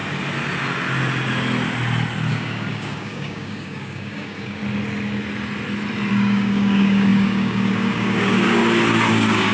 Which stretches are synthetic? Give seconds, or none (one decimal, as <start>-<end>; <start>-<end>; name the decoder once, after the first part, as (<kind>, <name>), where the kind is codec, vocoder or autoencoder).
2.3-4.6 (codec, DAC); 6.1-8.6; 9.1-9.5